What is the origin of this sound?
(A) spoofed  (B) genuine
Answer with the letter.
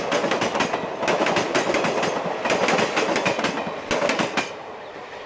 B